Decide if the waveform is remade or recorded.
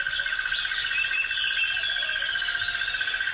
recorded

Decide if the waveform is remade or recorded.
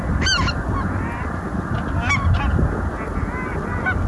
recorded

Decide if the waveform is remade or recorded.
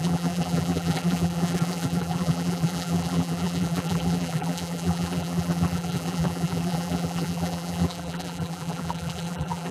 remade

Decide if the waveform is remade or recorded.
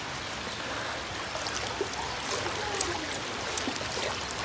recorded